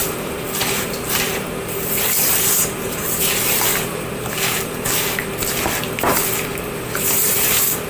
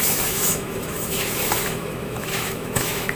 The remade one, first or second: second